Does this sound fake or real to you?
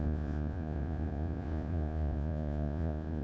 fake